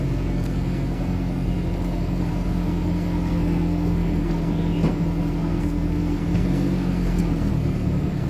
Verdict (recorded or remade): remade